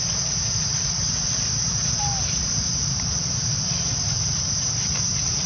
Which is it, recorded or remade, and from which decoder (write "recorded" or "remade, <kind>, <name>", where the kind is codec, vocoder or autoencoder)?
remade, vocoder, BigVGAN v2